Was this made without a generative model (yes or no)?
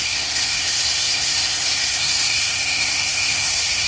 no